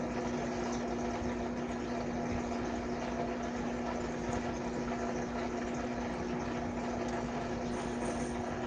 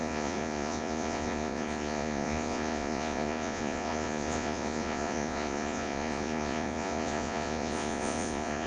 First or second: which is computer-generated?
second